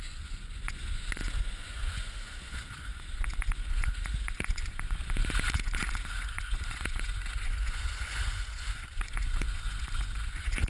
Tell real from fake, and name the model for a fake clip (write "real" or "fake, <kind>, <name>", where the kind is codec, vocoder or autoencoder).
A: fake, vocoder, Vocos